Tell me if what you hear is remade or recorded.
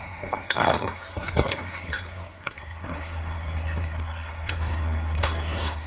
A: remade